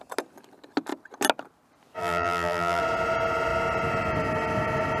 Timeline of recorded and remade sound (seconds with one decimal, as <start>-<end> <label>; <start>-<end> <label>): 0.0-2.0 recorded; 2.0-2.8 remade; 2.8-5.0 recorded